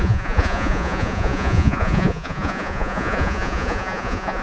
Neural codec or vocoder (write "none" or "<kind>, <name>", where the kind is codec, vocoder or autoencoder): vocoder, Vocos